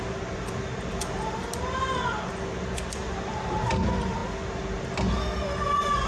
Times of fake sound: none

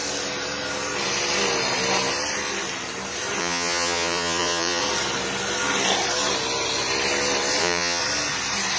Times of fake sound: 3.4-4.8; 7.6-8.0

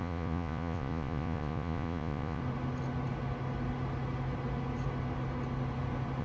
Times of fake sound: 0.0-2.4

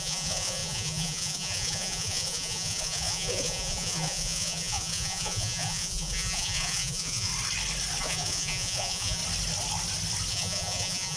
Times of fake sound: 0.0-7.3; 8.0-9.2; 10.3-11.2

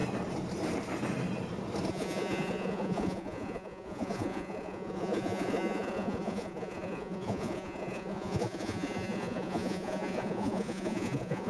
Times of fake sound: 1.9-11.5

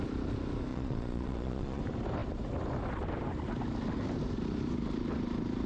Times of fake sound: 0.7-1.8